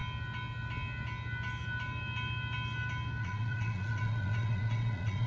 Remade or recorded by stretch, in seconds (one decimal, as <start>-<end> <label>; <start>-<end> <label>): 0.0-3.2 recorded; 3.2-5.3 remade